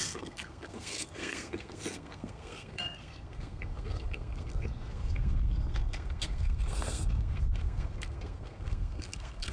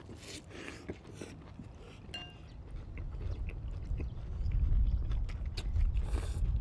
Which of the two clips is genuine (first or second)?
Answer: second